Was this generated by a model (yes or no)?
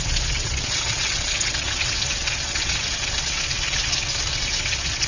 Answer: yes